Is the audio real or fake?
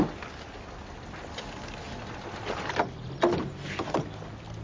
real